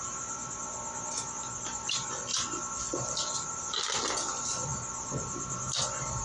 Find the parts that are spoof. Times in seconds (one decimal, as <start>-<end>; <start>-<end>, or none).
0.0-6.2